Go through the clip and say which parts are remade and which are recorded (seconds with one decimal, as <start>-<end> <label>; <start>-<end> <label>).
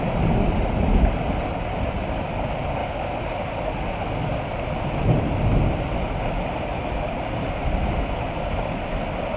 0.0-9.4 recorded